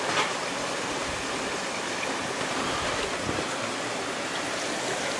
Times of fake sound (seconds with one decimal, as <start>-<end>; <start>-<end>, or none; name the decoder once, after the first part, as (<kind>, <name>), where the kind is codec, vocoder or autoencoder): none